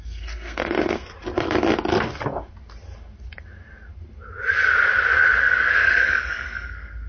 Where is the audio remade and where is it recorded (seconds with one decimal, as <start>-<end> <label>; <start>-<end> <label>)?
0.0-1.1 remade; 1.1-5.4 recorded; 5.4-7.1 remade